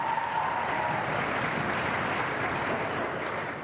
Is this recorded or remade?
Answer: recorded